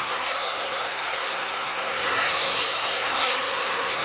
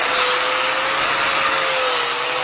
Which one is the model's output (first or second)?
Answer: first